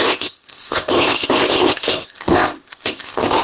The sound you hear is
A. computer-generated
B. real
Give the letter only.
A